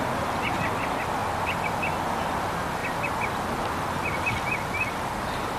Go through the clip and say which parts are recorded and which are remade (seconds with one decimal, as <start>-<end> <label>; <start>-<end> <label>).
0.0-2.8 recorded; 2.8-3.3 remade; 3.3-5.6 recorded